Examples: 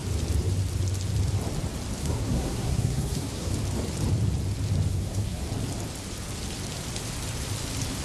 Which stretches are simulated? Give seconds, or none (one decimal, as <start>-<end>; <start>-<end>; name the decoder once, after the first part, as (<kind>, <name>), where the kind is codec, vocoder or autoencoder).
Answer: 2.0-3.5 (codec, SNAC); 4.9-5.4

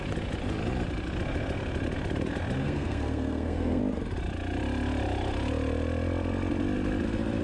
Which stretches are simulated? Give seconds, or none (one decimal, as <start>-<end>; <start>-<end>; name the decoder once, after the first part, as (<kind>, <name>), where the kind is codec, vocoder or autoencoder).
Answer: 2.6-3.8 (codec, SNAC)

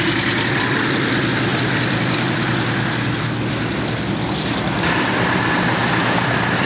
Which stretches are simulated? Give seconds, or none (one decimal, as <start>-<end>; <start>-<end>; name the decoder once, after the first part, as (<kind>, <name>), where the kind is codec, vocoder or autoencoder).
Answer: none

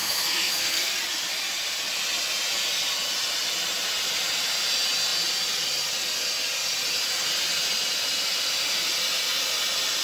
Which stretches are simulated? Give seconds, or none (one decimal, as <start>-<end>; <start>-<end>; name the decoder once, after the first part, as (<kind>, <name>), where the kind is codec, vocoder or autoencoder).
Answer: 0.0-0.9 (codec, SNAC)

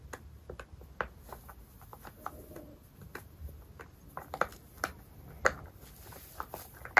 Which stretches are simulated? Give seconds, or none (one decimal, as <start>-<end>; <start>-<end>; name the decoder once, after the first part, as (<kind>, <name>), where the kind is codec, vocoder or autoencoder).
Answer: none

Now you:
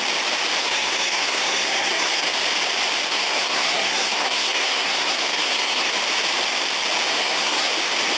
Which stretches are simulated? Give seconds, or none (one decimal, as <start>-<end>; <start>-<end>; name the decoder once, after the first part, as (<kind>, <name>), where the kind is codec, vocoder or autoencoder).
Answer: 0.6-2.3 (codec, SNAC); 3.1-5.9; 7.1-7.7